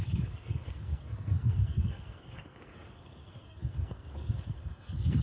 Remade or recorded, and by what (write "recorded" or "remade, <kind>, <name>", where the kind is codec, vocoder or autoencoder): remade, codec, SNAC